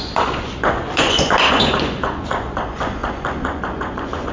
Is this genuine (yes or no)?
no